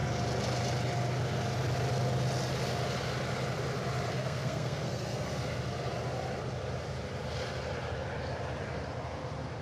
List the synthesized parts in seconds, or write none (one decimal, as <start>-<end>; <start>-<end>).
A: 4.1-5.3